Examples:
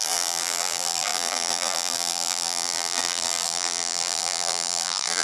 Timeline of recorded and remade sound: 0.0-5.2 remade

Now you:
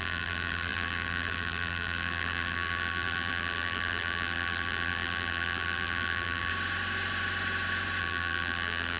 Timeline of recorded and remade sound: 0.0-6.5 remade; 6.5-8.0 recorded; 8.0-9.0 remade

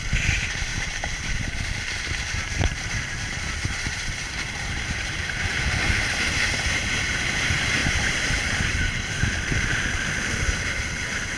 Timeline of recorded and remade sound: 0.0-0.7 recorded; 0.7-1.8 remade; 1.8-2.4 recorded; 2.4-5.2 remade; 5.2-7.8 recorded; 7.8-9.1 remade; 9.1-11.4 recorded

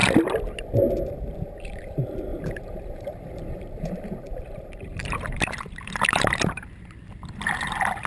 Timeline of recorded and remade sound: 0.0-2.3 recorded; 2.3-6.8 remade; 6.8-8.1 recorded